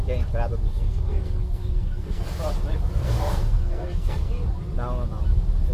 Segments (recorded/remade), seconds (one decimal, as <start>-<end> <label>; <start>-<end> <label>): 0.0-0.7 recorded; 0.7-2.3 remade; 2.3-3.0 recorded; 3.0-4.3 remade; 4.3-5.7 recorded